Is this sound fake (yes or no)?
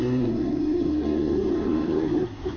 yes